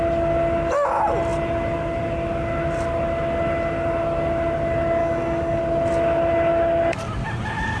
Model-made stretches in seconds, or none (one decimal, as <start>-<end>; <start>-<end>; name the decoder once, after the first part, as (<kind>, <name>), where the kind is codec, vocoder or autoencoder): 5.0-5.6 (codec, DAC)